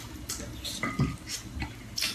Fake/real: real